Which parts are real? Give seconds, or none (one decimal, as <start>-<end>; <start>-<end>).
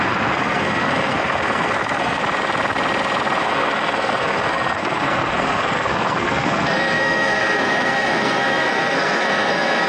2.2-3.4